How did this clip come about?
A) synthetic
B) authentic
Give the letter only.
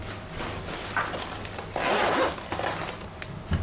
B